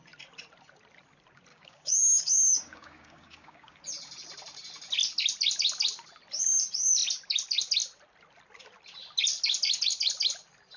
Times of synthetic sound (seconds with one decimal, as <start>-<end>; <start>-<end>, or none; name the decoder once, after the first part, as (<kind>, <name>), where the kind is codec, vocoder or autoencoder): 1.5-3.8 (codec, DAC)